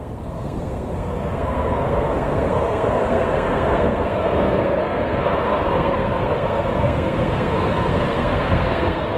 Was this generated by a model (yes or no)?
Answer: yes